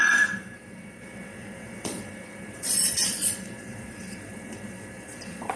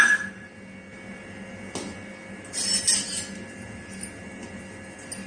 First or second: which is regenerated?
first